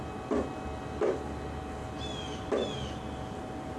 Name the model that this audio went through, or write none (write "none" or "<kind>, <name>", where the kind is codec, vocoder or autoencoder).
none